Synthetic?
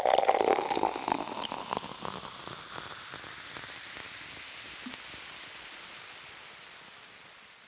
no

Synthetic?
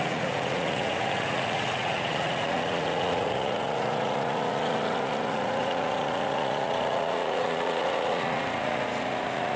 yes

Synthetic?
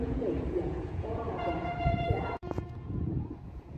yes